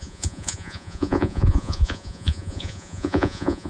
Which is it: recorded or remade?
remade